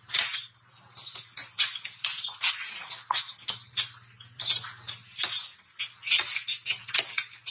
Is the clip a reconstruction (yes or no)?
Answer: no